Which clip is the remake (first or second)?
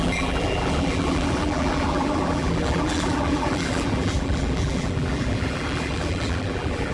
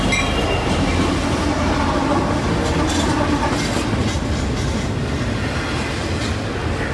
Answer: first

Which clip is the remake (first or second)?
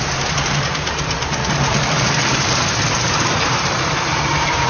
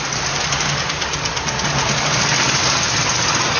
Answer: first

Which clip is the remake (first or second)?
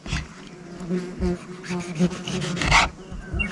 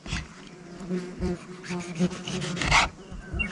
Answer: second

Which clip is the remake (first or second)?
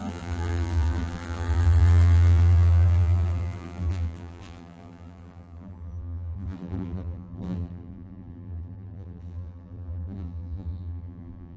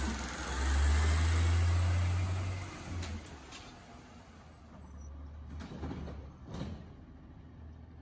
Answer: first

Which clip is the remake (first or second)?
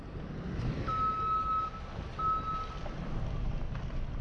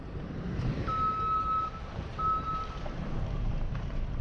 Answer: second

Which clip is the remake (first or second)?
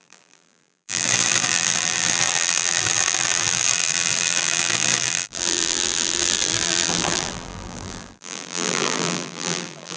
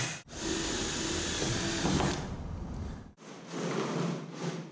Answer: first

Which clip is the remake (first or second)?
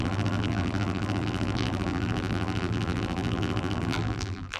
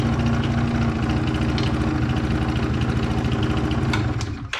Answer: first